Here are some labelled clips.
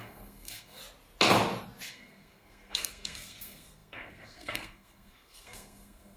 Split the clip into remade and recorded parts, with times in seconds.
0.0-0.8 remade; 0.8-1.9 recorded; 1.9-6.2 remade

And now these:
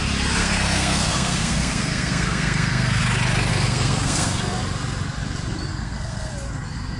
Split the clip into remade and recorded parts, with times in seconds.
0.0-0.4 recorded; 0.4-3.0 remade; 3.0-3.5 recorded; 3.5-4.6 remade; 4.6-5.7 recorded; 5.7-6.3 remade; 6.3-7.0 recorded

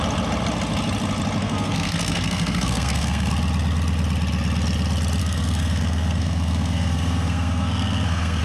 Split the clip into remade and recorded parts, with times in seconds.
0.0-1.4 recorded; 1.4-3.3 remade; 3.3-5.2 recorded; 5.2-8.4 remade

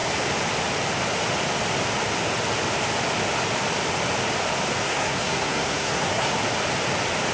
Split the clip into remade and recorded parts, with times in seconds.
0.0-4.8 recorded; 4.8-6.4 remade; 6.4-7.3 recorded

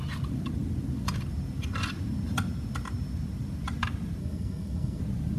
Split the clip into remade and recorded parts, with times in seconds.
0.0-4.2 recorded; 4.2-5.0 remade; 5.0-5.4 recorded

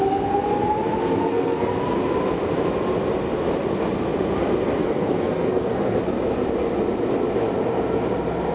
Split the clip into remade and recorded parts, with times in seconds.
0.0-1.2 recorded; 1.2-1.8 remade; 1.8-4.8 recorded; 4.8-6.0 remade; 6.0-8.5 recorded

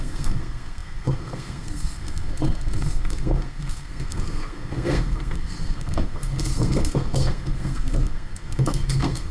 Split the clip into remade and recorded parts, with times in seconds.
0.0-9.3 remade

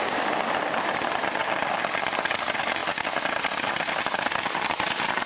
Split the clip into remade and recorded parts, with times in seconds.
0.0-5.3 recorded